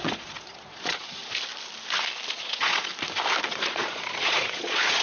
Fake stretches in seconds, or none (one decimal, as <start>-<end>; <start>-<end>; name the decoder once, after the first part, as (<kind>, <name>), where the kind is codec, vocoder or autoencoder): 0.0-1.2 (vocoder, Vocos); 2.3-2.9; 3.5-5.0